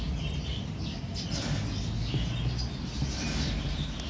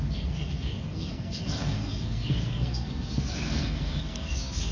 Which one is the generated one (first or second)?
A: second